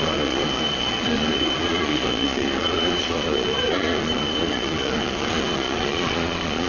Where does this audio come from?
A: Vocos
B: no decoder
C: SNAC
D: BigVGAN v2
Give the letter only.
A